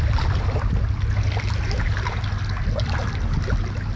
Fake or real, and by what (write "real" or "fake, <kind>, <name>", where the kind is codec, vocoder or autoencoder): real